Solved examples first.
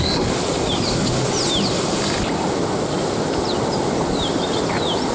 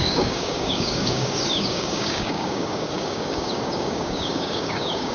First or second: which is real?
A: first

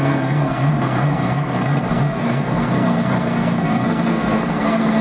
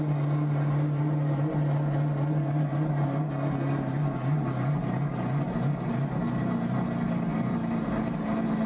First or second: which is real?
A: second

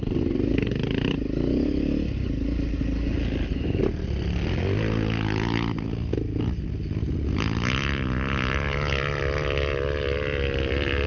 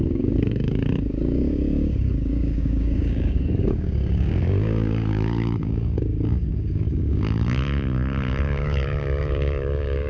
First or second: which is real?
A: first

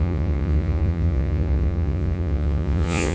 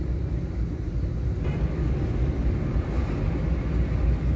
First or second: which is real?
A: second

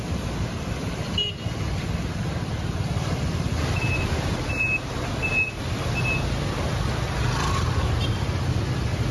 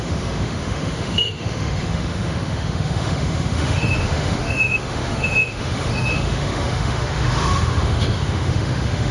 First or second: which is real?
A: first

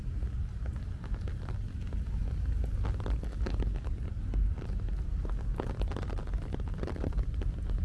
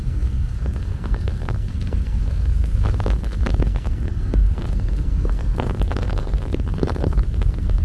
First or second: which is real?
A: first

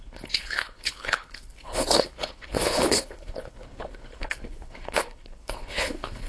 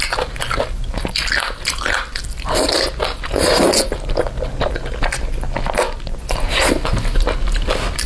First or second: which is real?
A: second